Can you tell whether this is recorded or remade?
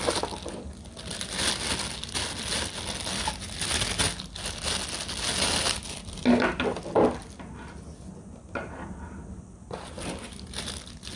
recorded